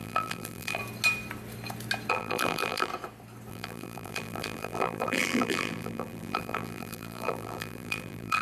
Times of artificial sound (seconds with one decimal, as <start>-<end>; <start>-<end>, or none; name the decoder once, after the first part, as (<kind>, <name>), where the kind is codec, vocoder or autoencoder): 0.0-0.8 (vocoder, BigVGAN v2); 2.1-2.9; 3.5-8.4